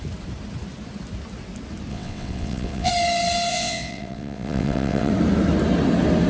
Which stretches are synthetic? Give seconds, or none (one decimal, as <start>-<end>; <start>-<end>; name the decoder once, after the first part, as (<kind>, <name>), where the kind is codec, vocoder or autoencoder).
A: 1.9-2.9 (vocoder, WaveNeXt); 3.5-5.1